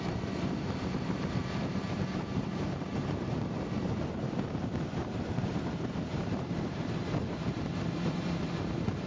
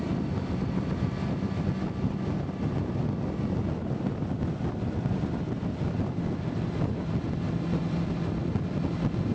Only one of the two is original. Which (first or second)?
second